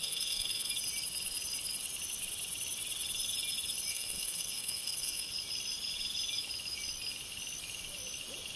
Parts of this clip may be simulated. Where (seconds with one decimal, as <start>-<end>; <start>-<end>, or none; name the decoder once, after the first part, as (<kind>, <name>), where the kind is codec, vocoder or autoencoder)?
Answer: 0.0-0.7 (codec, SNAC); 3.9-5.3

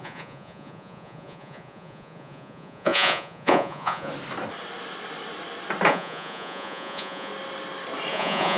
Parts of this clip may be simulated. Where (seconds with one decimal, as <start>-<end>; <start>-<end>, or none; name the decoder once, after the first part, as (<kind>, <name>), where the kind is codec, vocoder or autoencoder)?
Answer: 0.0-4.1 (vocoder, Vocos); 5.9-7.3; 8.1-8.6

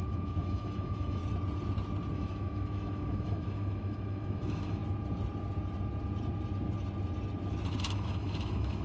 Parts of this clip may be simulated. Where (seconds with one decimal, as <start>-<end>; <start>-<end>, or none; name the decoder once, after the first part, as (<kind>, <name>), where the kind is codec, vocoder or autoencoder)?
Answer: 0.0-1.2 (autoencoder, DAC-VAE); 2.1-4.8; 7.8-8.8

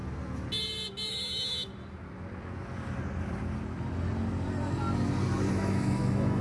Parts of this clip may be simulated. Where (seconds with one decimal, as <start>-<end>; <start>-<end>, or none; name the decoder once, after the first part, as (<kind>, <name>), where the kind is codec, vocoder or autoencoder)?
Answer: 1.1-1.7 (autoencoder, DAC-VAE); 5.5-6.4

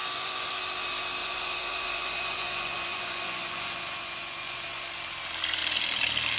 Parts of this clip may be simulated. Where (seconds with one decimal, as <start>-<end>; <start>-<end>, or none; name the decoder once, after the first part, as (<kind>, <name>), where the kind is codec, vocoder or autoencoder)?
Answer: 0.0-0.6 (vocoder, Vocos); 1.2-5.0

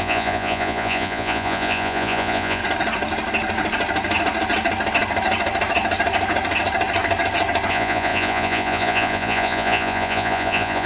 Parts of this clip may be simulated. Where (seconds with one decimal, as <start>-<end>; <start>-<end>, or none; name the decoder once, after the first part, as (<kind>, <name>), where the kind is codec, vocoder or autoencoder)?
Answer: 0.0-2.6 (vocoder, Vocos); 7.7-10.9